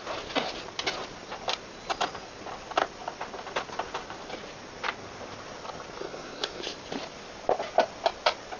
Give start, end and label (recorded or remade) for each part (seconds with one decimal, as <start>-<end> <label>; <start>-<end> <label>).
0.0-6.0 recorded; 6.0-6.6 remade; 6.6-8.6 recorded